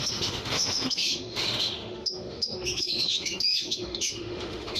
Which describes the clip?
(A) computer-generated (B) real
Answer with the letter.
A